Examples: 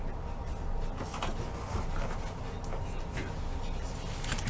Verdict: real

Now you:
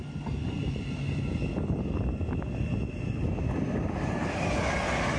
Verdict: real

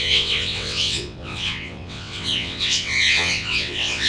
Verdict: fake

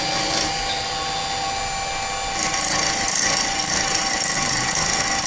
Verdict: real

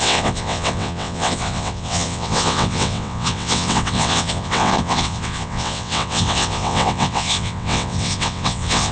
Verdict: fake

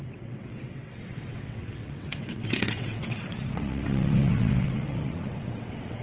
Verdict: fake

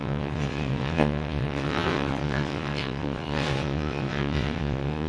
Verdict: fake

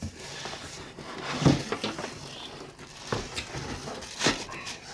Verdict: real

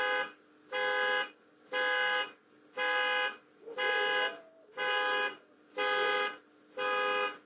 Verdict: real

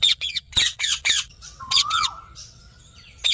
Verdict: fake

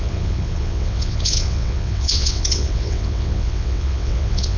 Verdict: fake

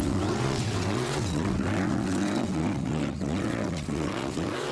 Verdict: fake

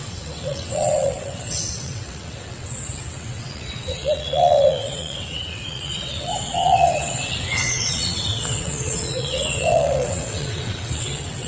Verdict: fake